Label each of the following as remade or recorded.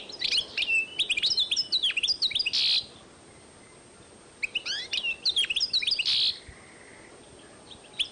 recorded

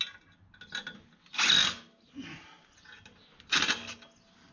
recorded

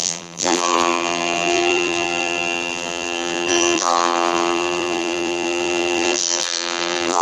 remade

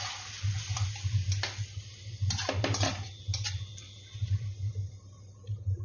recorded